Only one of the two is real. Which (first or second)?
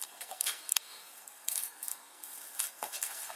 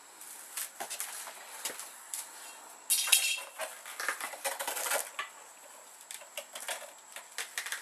second